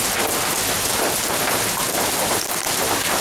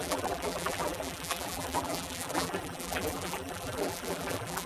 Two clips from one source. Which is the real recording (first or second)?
first